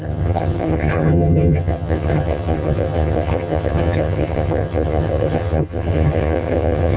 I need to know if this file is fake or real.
fake